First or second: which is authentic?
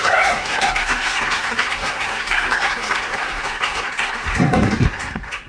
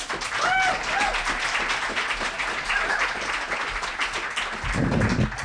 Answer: second